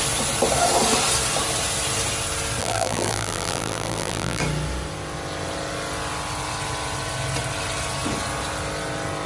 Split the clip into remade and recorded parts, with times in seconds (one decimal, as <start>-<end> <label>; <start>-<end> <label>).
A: 0.0-2.6 recorded; 2.6-4.4 remade; 4.4-9.3 recorded